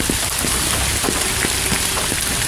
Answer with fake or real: real